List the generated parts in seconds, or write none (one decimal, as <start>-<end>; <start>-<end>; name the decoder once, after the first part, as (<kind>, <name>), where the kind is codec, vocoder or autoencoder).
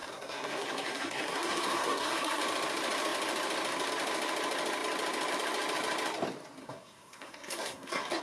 0.0-2.4 (codec, SNAC); 6.6-8.2